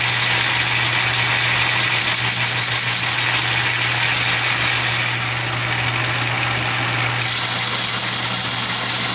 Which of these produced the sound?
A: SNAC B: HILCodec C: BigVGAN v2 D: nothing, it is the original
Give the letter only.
D